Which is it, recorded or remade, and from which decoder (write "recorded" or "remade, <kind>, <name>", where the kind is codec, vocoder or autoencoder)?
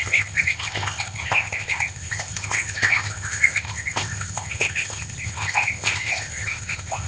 remade, codec, ZipCodec